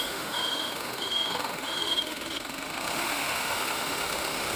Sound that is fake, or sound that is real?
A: fake